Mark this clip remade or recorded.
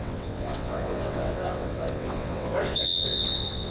remade